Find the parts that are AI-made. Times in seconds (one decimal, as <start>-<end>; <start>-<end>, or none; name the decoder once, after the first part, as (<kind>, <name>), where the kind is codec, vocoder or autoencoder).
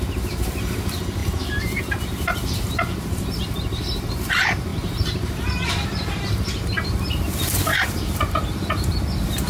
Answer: 0.0-9.5 (vocoder, BigVGAN v2)